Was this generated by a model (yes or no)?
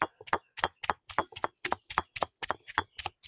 no